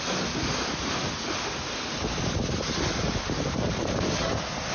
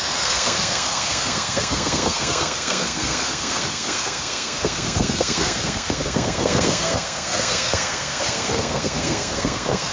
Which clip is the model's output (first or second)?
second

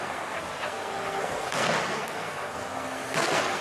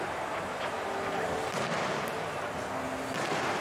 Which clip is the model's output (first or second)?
first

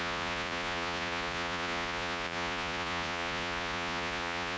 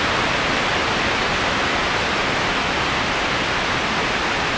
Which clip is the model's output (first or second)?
first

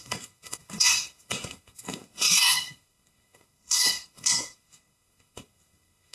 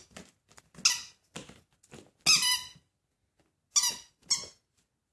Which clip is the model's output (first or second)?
first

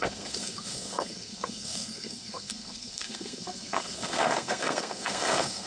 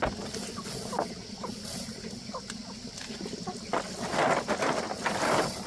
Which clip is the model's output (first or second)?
first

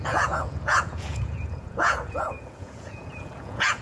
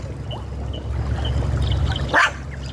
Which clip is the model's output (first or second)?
first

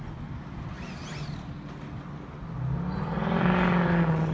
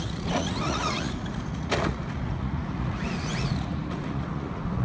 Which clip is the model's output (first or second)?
second